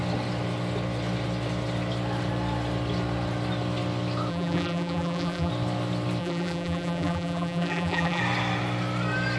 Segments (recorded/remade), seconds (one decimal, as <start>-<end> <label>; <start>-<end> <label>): 0.0-4.3 recorded; 4.3-5.5 remade; 5.5-6.2 recorded; 6.2-8.2 remade; 8.2-9.4 recorded